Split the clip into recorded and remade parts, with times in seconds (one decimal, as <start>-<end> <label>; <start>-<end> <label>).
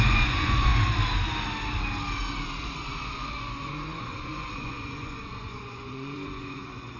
0.0-0.7 remade; 0.7-2.6 recorded; 2.6-7.0 remade